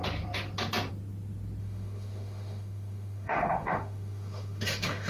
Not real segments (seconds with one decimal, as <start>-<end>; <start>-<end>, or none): 1.6-5.1